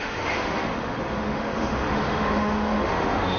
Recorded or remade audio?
remade